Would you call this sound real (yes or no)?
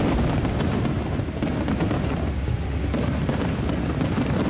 yes